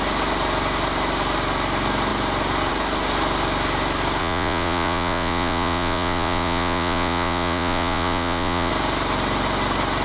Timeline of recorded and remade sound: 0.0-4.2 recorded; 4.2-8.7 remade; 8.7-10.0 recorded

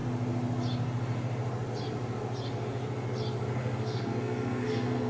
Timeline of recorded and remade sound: 0.0-3.6 recorded; 3.6-5.1 remade